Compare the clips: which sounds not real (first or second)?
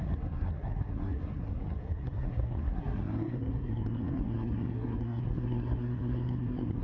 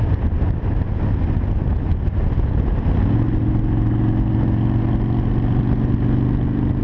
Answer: first